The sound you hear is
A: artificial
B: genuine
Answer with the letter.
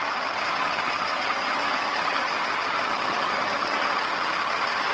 A